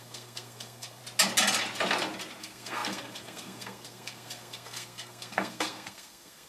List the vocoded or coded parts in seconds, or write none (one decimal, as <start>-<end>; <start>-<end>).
0.0-1.0; 2.4-6.5